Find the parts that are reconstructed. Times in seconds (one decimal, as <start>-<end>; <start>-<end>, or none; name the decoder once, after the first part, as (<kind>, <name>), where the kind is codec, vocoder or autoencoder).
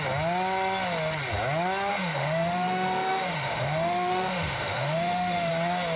1.9-5.5 (autoencoder, DAC-VAE)